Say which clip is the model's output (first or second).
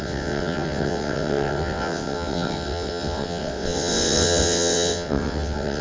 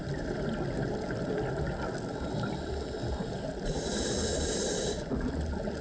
first